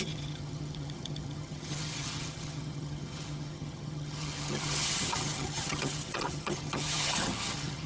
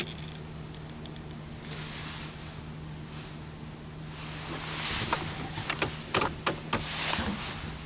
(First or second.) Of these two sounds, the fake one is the first